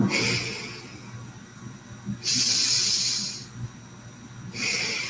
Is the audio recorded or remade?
recorded